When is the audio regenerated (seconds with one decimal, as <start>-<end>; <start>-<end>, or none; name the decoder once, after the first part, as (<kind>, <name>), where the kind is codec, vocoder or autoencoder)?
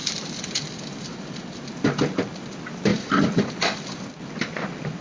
0.0-1.7 (vocoder, BigVGAN v2); 2.9-4.0